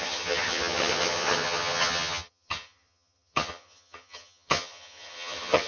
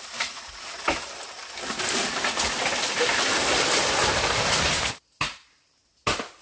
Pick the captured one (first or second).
second